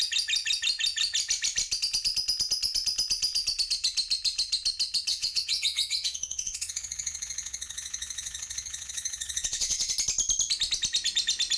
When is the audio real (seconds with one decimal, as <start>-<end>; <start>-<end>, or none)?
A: 0.0-5.1; 9.9-11.6